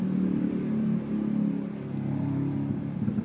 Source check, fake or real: real